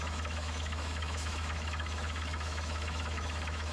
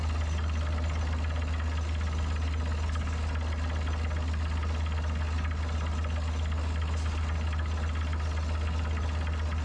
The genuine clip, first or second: second